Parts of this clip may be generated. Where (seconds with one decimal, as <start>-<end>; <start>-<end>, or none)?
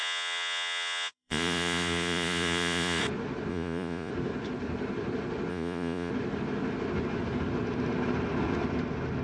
0.0-3.0; 3.5-4.1; 5.5-6.1